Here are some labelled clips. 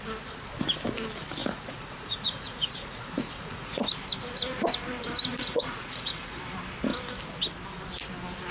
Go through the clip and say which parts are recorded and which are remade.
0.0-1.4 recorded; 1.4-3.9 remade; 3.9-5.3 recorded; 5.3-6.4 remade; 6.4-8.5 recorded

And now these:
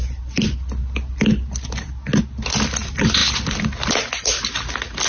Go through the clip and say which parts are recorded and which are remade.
0.0-5.1 recorded

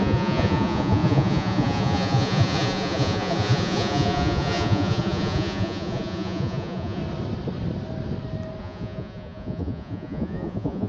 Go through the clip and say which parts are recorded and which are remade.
0.0-7.0 remade; 7.0-8.6 recorded; 8.6-10.9 remade

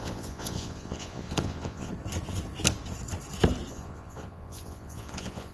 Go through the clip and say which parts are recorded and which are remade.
0.0-1.9 remade; 1.9-3.7 recorded; 3.7-5.5 remade

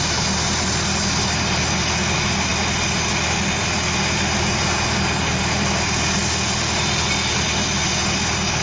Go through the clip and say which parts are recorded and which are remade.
0.0-8.6 recorded

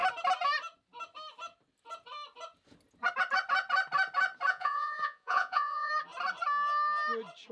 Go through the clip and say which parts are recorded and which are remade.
0.0-4.5 recorded; 4.5-5.9 remade; 5.9-7.5 recorded

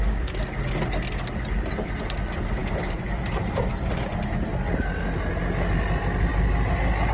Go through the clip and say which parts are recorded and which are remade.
0.0-7.1 recorded

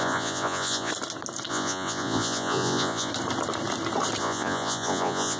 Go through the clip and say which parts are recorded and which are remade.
0.0-0.9 remade; 0.9-1.5 recorded; 1.5-3.1 remade; 3.1-4.2 recorded; 4.2-5.4 remade